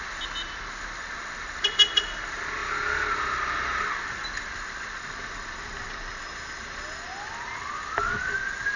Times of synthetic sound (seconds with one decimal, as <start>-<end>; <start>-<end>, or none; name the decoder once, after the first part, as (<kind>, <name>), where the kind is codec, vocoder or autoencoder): none